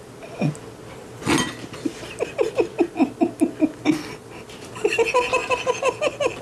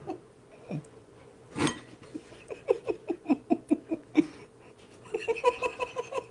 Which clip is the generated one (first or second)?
second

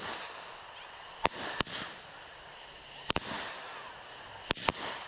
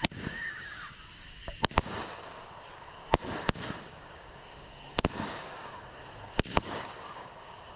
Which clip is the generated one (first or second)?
second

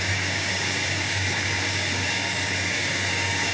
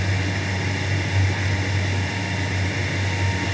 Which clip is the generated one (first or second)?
first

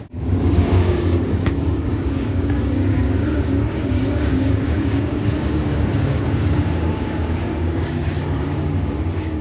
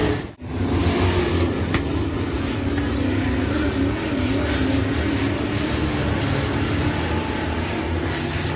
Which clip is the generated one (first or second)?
first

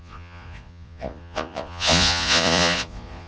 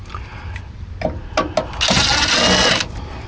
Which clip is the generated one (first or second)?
first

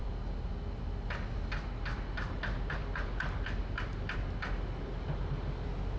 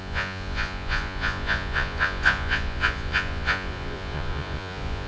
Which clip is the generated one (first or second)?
second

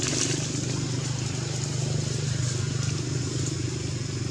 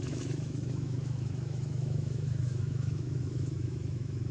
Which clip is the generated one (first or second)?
second